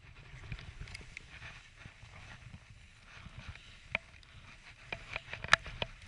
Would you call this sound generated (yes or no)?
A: no